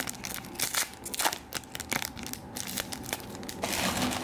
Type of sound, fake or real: real